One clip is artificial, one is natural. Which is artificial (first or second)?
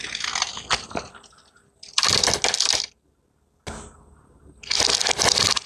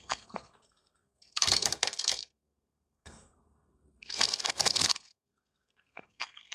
second